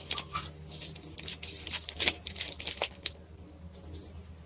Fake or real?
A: real